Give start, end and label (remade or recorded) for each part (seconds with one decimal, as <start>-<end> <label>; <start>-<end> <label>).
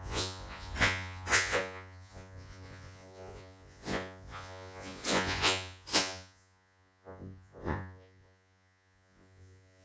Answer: 0.0-9.8 remade